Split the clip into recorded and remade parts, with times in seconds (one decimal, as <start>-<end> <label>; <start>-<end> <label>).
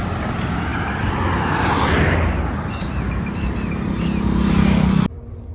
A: 0.0-5.5 recorded